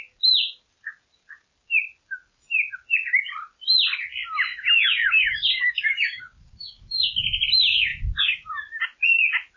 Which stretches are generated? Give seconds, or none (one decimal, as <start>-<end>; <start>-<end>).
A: 5.0-6.4